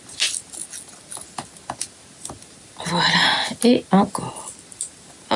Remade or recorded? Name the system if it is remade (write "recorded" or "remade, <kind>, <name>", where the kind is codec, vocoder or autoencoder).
recorded